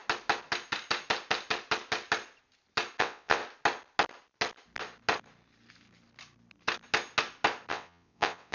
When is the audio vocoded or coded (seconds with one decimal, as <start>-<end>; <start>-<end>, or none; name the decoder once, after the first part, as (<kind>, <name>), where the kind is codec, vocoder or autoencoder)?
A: 3.0-3.4 (vocoder, WaveNeXt); 7.7-8.5